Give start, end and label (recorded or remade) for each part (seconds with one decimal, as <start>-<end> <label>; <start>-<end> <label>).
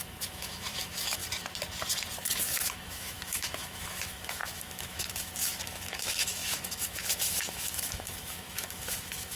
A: 0.0-1.2 remade; 1.2-2.3 recorded; 2.3-9.4 remade